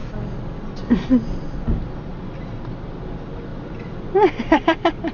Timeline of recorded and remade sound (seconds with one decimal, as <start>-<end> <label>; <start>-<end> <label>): 0.0-2.1 recorded; 2.1-2.6 remade; 2.6-3.5 recorded; 3.5-4.0 remade; 4.0-5.1 recorded